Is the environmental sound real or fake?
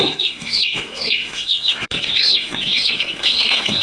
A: fake